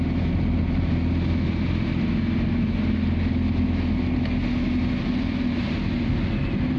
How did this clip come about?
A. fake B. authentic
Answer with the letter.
B